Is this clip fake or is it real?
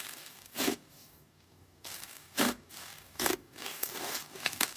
fake